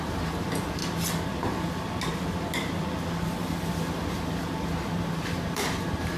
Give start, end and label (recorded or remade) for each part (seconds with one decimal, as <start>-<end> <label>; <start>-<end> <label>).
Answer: 0.0-0.8 remade; 0.8-4.1 recorded; 4.1-6.2 remade